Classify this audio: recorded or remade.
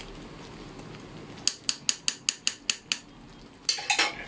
recorded